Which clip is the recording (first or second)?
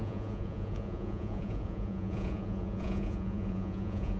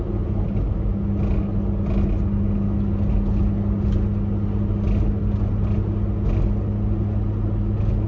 second